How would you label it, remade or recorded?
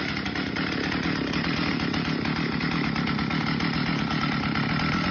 remade